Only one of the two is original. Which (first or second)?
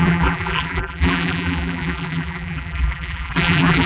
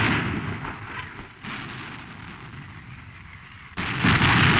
second